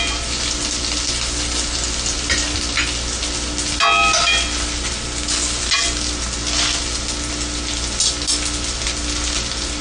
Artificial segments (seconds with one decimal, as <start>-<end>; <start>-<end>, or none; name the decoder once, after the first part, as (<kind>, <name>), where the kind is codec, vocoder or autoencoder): none

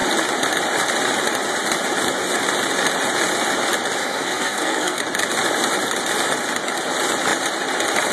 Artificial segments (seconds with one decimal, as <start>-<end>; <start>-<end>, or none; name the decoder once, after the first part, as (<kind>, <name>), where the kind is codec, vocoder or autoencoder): 4.0-5.0 (codec, SNAC)

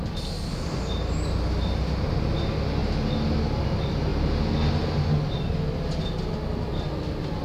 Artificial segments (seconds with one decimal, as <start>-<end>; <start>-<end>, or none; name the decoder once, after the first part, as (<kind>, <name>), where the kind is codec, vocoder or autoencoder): 6.5-7.4 (vocoder, BigVGAN v2)

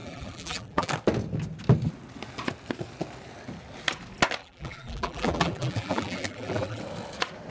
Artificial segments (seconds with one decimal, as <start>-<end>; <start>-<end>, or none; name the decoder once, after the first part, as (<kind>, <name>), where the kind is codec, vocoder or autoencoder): 0.0-0.9 (vocoder, BigVGAN v2); 4.4-6.8

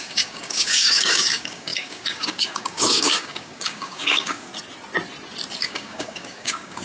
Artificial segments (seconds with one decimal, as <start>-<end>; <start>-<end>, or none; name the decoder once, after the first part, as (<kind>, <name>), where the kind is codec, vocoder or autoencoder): 0.0-4.5 (codec, DAC); 5.6-6.8

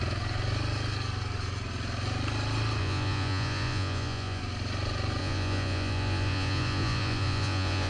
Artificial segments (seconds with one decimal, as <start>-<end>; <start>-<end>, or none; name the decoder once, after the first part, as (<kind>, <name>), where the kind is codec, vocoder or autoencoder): 2.8-4.4 (vocoder, Vocos); 5.2-7.9

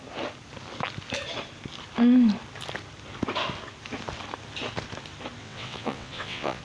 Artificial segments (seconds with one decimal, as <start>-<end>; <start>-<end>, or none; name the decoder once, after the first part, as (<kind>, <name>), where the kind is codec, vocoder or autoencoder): 5.4-6.6 (vocoder, WaveNeXt)

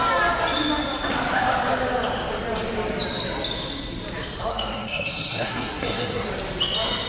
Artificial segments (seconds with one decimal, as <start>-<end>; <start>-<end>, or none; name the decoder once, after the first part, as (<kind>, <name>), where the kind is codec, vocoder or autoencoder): 4.5-6.3 (codec, SNAC)